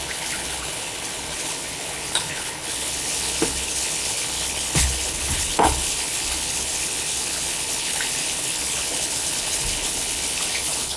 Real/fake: fake